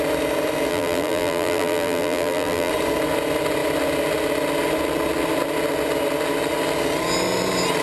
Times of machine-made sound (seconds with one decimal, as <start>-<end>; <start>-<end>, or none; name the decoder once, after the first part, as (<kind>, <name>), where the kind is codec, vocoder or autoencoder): 0.7-2.7 (vocoder, BigVGAN v2)